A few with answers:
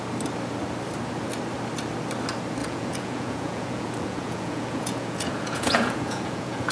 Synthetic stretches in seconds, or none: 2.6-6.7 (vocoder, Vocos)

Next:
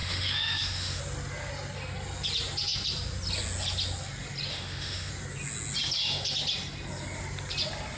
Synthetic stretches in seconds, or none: 0.0-1.0 (autoencoder, DAC-VAE); 4.5-5.1

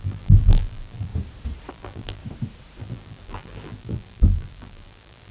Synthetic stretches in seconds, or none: 0.0-1.1 (vocoder, BigVGAN v2); 1.7-2.2; 2.8-5.3